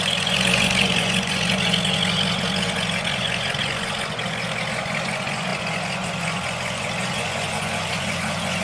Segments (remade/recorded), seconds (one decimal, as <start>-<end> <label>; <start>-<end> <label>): 0.0-8.6 remade